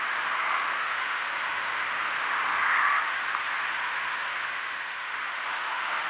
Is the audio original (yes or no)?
no